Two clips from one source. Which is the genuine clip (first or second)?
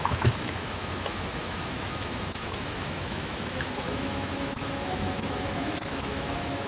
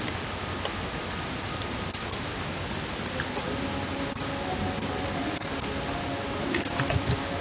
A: second